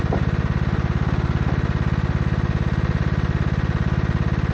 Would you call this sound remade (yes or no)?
no